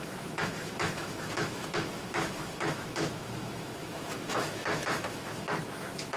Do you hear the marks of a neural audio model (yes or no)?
yes